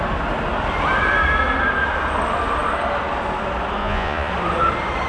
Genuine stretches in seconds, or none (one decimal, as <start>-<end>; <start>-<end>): 0.0-3.8; 4.3-5.1